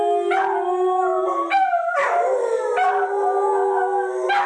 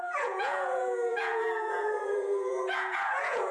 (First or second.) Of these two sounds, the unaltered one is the first